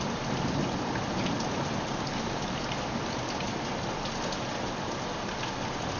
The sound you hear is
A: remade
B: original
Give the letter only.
B